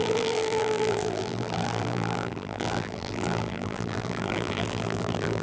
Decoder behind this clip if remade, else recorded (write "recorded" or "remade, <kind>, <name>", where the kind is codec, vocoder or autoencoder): remade, vocoder, BigVGAN v2